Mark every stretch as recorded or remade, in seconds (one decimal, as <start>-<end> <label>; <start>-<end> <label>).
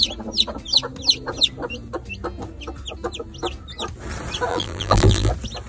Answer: 0.0-4.5 recorded; 4.5-5.3 remade; 5.3-5.7 recorded